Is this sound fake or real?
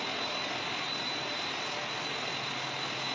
real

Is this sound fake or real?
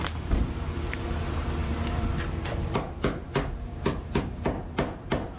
fake